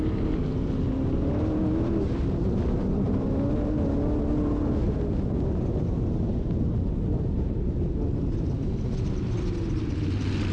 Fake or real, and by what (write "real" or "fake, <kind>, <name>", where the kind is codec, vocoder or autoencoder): real